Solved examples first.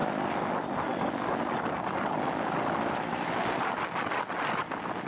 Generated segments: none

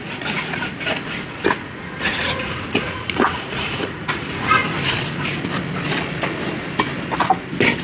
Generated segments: 0.0-4.6 (vocoder, Vocos)

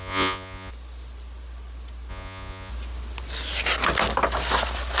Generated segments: 0.0-0.7 (vocoder, Vocos); 2.1-2.7